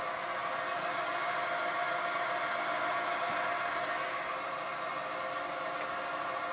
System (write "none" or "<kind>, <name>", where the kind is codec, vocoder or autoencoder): none